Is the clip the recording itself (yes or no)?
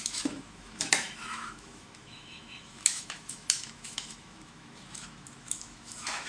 no